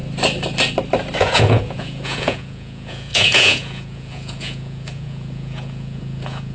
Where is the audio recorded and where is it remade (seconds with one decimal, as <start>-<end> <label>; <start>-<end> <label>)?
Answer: 0.0-1.2 recorded; 1.2-6.5 remade